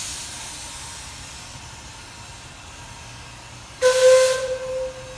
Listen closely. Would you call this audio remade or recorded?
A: recorded